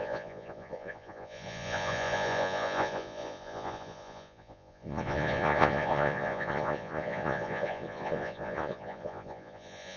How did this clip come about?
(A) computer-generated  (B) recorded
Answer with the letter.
A